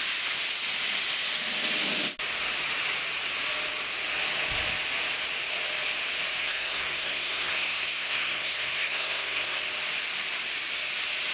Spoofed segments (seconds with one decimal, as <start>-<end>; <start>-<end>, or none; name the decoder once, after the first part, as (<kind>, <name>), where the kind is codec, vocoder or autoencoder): 6.4-9.6 (codec, SNAC)